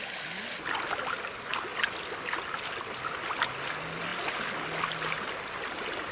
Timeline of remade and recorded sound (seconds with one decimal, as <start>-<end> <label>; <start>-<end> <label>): 0.0-6.1 recorded